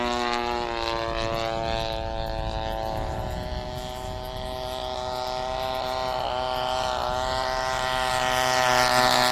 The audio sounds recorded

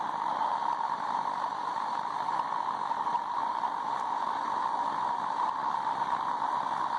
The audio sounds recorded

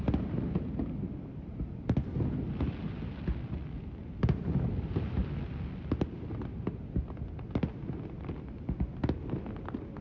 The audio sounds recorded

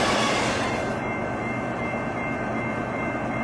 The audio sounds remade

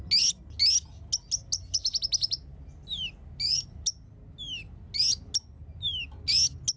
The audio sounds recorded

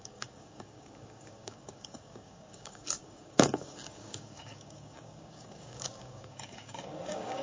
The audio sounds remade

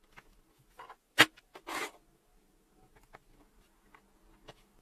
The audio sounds recorded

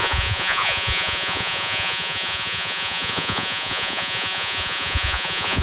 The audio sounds remade